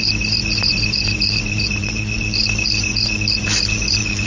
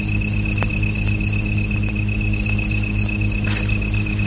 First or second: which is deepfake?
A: first